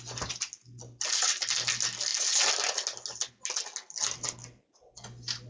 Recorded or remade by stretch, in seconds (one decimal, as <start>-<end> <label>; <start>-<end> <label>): 0.0-5.5 recorded